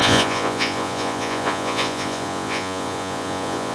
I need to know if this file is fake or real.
fake